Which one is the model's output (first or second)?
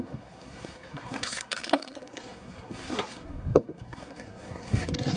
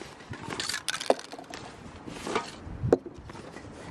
first